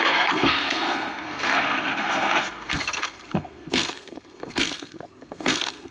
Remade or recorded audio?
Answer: remade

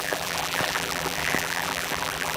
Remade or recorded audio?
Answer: remade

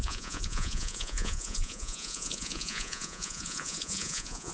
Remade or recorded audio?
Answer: remade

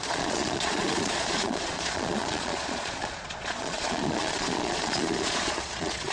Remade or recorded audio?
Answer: remade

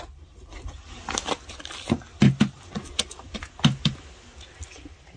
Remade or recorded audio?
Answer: recorded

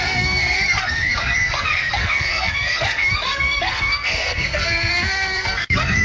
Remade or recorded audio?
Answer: remade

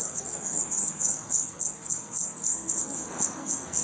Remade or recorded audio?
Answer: remade